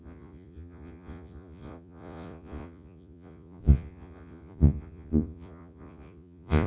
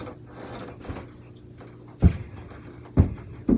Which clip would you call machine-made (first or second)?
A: first